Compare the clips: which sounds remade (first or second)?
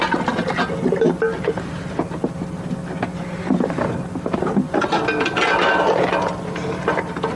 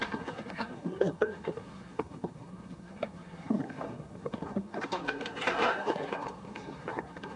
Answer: second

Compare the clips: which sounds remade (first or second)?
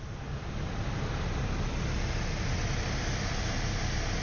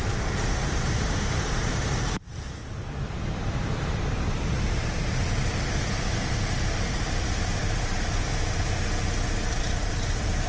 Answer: second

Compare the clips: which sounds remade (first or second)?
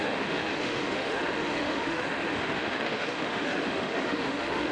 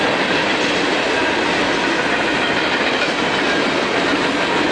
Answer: first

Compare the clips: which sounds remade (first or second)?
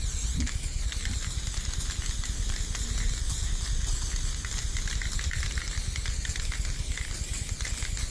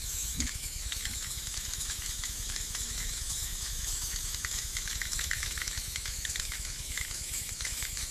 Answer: second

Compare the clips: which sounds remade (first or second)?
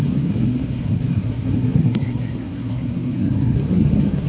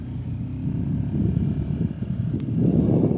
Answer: first